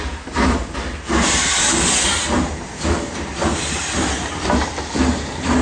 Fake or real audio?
real